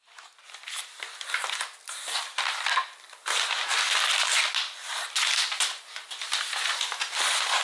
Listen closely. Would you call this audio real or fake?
real